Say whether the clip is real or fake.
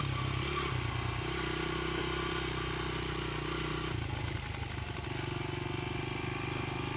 real